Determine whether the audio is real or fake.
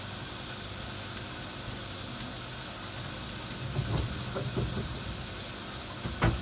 real